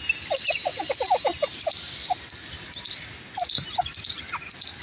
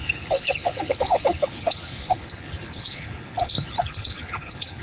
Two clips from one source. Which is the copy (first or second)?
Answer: second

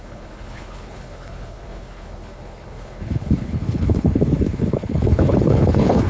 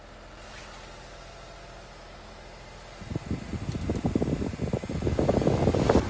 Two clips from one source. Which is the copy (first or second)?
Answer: first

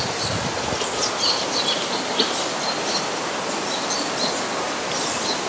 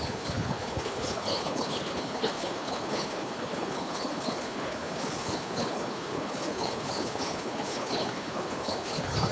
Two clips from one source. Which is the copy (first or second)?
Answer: second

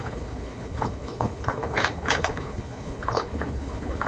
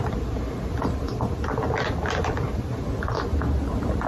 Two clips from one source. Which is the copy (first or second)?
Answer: first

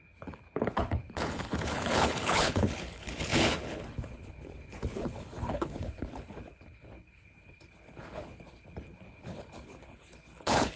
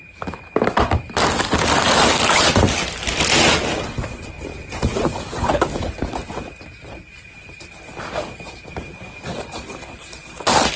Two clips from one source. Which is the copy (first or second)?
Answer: first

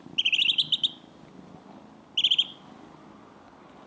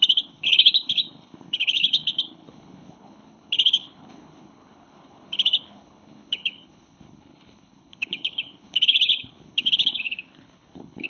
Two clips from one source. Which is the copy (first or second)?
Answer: second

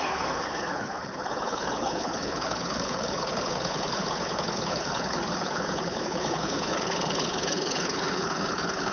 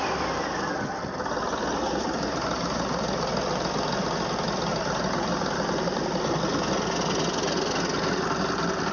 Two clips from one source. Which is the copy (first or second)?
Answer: first